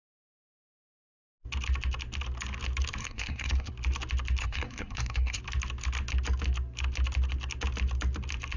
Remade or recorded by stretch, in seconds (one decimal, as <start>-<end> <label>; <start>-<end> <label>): 0.0-3.0 recorded; 3.0-3.7 remade; 3.7-4.4 recorded; 4.4-5.4 remade; 5.4-8.6 recorded